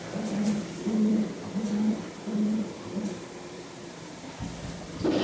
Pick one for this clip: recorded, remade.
remade